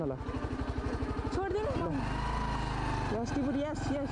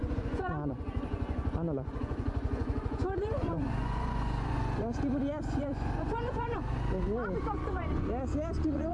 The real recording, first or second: first